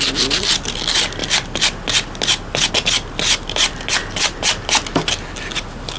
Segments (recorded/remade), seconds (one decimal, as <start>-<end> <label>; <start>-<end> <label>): 0.0-6.0 recorded

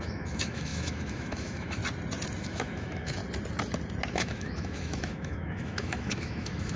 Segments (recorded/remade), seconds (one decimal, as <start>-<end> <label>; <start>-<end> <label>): 0.0-1.8 remade; 1.8-2.4 recorded; 2.4-3.2 remade; 3.2-4.1 recorded; 4.1-6.8 remade

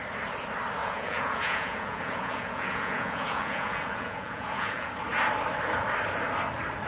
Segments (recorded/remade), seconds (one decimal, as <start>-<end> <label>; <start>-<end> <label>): 0.0-0.8 recorded; 0.8-4.9 remade; 4.9-6.9 recorded

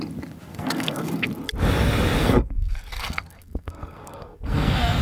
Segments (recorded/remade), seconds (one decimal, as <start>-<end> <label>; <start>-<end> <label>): 0.0-0.5 recorded; 0.5-1.3 remade; 1.3-2.2 recorded; 2.2-5.0 remade

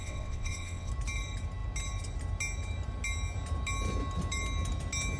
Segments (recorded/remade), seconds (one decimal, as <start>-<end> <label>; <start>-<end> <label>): 0.0-0.9 remade; 0.9-5.2 recorded

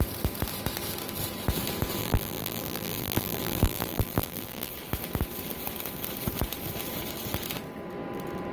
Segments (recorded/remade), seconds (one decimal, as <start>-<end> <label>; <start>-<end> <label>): 0.0-2.0 recorded; 2.0-4.7 remade; 4.7-8.5 recorded

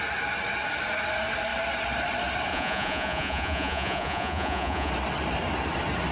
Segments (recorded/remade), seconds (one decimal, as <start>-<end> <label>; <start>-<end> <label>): 0.0-2.5 recorded; 2.5-4.9 remade; 4.9-6.1 recorded